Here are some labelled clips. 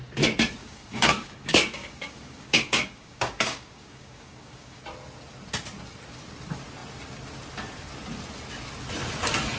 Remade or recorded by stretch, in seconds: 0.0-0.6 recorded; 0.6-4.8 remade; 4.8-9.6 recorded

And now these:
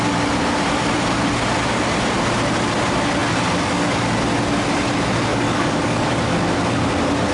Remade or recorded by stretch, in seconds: 0.0-5.3 recorded; 5.3-6.1 remade; 6.1-7.3 recorded